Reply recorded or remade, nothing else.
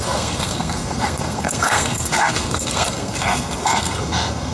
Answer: remade